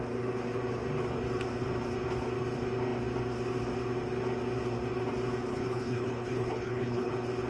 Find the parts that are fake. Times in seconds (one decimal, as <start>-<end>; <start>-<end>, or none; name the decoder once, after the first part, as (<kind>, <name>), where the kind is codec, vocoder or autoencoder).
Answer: 5.5-7.1 (codec, HILCodec)